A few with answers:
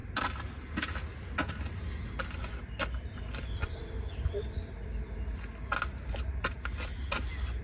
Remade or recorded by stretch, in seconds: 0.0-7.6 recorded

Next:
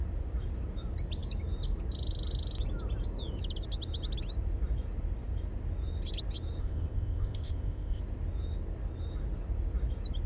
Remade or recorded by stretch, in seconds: 0.0-6.6 recorded; 6.6-8.0 remade; 8.0-10.3 recorded

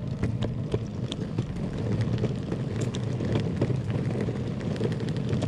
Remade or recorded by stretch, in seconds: 0.0-5.5 recorded

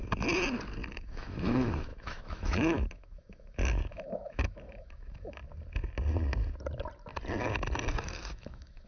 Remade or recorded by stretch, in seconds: 0.0-0.9 recorded; 0.9-5.4 remade; 5.4-8.0 recorded; 8.0-8.9 remade

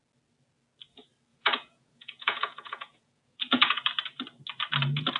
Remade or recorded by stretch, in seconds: 0.0-1.3 recorded; 1.3-3.9 remade; 3.9-5.2 recorded